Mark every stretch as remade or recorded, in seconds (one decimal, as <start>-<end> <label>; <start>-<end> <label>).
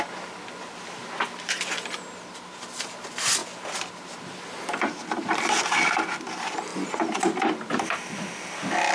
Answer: 0.0-8.9 recorded